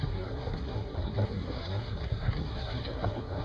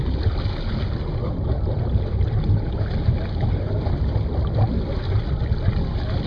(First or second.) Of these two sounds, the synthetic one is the first